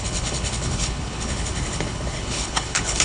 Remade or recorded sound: remade